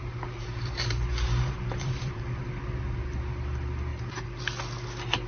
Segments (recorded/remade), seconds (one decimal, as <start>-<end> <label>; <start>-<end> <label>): 0.0-2.5 remade; 2.5-3.9 recorded; 3.9-4.4 remade; 4.4-5.3 recorded